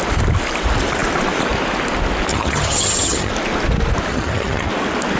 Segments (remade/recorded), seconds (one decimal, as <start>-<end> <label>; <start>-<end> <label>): 0.0-2.3 recorded; 2.3-3.3 remade; 3.3-4.1 recorded; 4.1-4.7 remade; 4.7-5.2 recorded